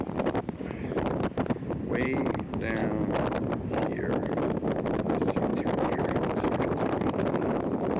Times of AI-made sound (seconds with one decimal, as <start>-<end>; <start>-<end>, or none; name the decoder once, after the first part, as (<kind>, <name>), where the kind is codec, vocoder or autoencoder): 5.5-6.0 (autoencoder, DAC-VAE)